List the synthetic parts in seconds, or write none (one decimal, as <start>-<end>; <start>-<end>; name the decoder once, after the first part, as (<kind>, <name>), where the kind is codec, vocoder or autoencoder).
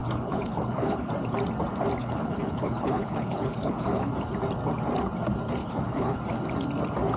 0.0-1.1 (codec, HILCodec); 2.0-4.1; 5.6-6.2